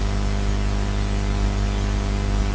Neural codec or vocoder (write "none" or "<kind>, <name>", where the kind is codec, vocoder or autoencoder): none